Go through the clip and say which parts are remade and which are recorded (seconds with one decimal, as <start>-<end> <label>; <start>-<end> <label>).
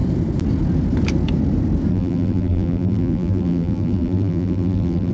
0.0-1.9 recorded; 1.9-5.1 remade